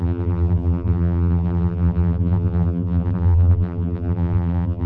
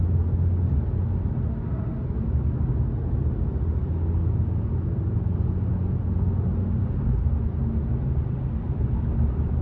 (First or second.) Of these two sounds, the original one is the second